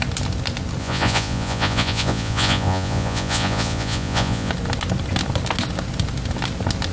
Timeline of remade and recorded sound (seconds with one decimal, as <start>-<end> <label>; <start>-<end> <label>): 0.0-0.8 recorded; 0.8-4.5 remade; 4.5-6.9 recorded